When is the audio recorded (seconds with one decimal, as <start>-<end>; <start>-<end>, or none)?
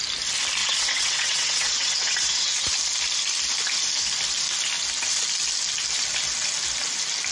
0.0-0.6; 2.7-7.3